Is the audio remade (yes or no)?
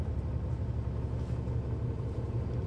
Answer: no